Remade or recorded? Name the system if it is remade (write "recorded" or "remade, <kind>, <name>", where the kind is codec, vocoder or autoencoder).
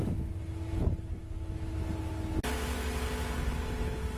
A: recorded